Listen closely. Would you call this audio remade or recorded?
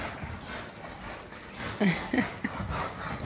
recorded